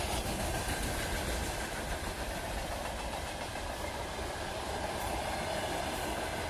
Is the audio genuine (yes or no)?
no